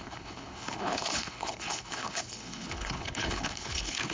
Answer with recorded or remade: remade